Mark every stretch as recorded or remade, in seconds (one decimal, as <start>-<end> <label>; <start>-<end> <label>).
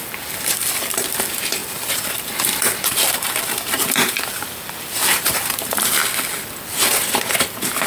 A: 0.0-6.0 remade; 6.0-7.9 recorded